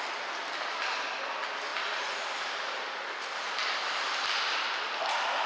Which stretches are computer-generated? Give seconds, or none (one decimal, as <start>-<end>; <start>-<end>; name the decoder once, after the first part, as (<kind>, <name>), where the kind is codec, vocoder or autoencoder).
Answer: none